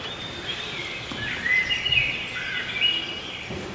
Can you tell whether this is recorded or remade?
recorded